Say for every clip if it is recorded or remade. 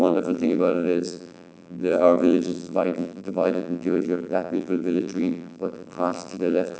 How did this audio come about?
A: remade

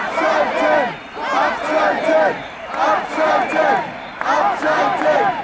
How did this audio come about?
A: recorded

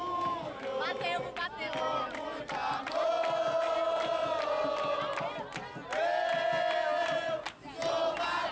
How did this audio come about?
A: recorded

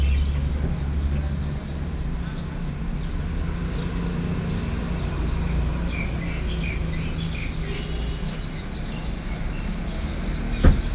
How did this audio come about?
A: recorded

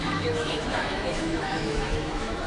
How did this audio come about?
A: remade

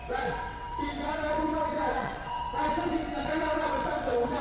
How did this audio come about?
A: remade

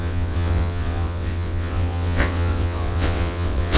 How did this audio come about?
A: remade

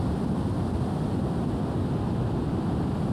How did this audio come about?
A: recorded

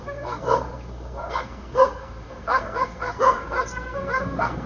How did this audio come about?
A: remade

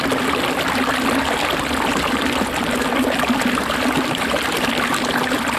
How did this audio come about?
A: recorded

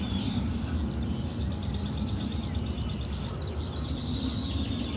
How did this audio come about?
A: recorded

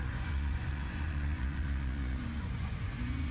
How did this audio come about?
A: remade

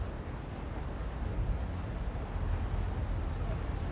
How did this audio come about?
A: recorded